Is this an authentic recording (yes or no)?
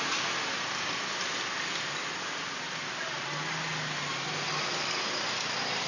yes